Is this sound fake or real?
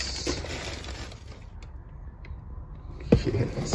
real